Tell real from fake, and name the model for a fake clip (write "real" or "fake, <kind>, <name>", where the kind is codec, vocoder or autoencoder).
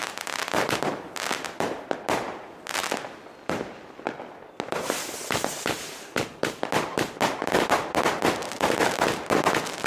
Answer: real